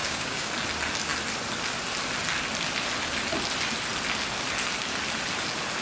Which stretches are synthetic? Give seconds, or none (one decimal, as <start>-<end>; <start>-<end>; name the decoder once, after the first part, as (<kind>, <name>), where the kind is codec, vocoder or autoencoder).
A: 0.0-0.5 (codec, DAC)